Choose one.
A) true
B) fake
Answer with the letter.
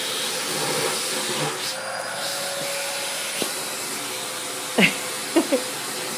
A